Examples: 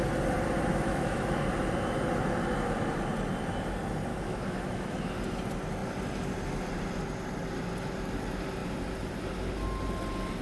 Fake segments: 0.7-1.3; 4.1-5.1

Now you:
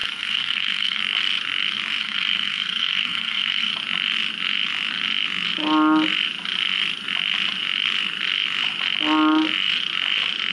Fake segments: 0.0-1.0; 2.0-3.7

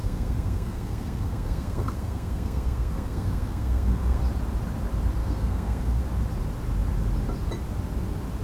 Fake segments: 0.0-4.2; 5.2-6.0

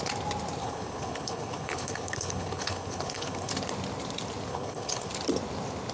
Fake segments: 0.6-3.5; 4.5-5.1

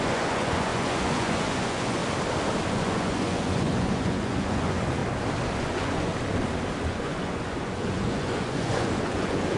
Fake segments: 0.0-2.0; 2.7-5.0; 5.6-6.1; 6.8-9.6

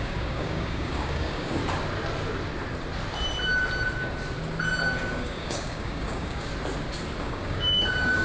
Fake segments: 0.0-1.6; 5.1-6.5; 7.2-8.2

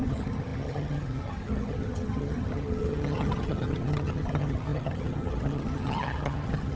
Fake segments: 0.0-6.8

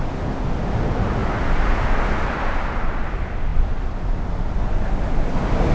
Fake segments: none